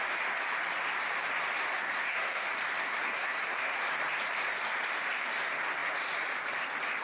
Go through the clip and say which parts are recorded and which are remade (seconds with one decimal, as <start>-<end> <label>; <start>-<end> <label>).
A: 0.0-1.8 recorded; 1.8-2.4 remade; 2.4-2.8 recorded; 2.8-3.8 remade; 3.8-7.0 recorded